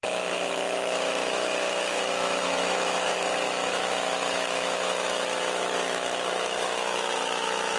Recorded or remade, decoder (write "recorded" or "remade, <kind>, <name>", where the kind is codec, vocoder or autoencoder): remade, autoencoder, DAC-VAE